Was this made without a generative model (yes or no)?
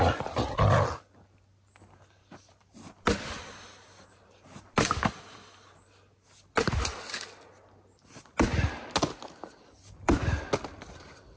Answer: yes